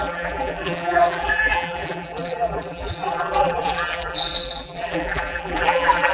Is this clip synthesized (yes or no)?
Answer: yes